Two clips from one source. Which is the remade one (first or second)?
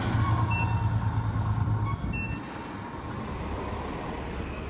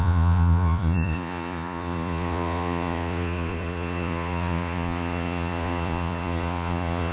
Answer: second